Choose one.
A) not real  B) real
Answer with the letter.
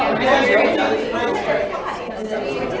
B